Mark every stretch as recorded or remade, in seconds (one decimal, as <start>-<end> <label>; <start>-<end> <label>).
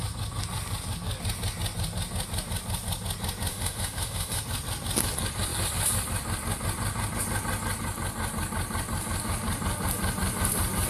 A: 0.0-3.5 recorded; 3.5-4.4 remade; 4.4-10.9 recorded